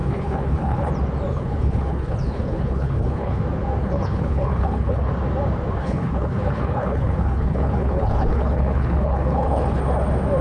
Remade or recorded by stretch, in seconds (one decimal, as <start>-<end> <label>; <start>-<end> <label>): 0.0-0.9 remade; 0.9-1.3 recorded; 1.3-3.4 remade; 3.4-3.8 recorded; 3.8-5.1 remade; 5.1-5.8 recorded; 5.8-9.8 remade; 9.8-10.4 recorded